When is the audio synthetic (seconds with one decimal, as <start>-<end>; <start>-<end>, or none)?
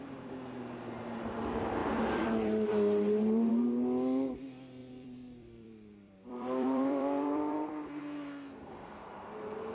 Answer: 1.8-3.5; 4.8-8.0